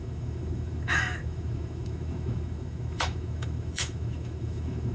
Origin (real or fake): fake